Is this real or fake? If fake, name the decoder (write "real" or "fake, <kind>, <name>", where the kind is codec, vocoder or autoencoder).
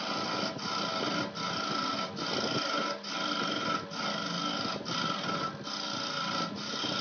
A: real